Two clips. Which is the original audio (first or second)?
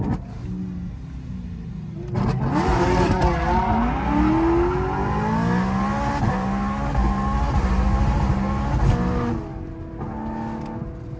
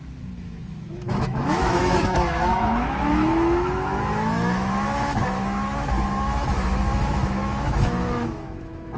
first